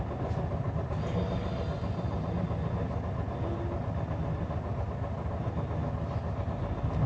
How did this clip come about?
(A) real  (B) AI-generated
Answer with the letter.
A